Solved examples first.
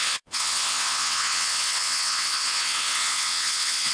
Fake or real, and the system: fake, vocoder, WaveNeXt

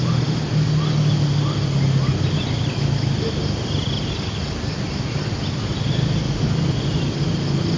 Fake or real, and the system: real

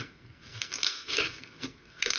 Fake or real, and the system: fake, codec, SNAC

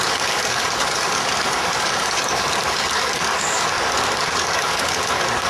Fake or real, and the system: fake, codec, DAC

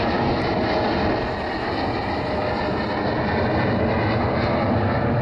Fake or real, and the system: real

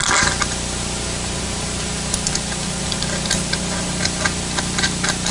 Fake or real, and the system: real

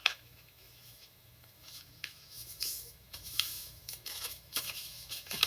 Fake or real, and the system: fake, autoencoder, DAC-VAE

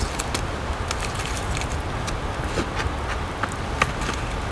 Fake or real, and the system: real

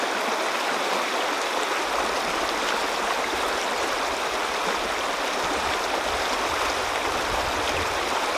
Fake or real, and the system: real